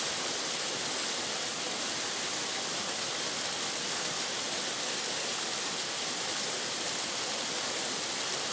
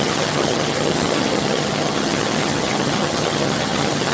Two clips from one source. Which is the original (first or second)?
first